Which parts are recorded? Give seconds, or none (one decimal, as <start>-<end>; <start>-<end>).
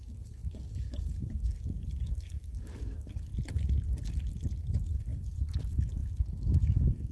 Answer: 3.3-4.6